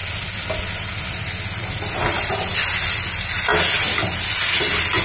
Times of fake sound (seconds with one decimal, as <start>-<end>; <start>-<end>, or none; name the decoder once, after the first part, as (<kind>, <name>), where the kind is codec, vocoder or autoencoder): none